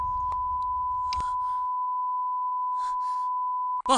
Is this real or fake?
real